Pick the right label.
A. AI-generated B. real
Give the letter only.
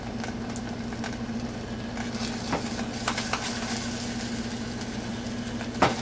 B